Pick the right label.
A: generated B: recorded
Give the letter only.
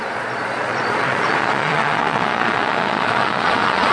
A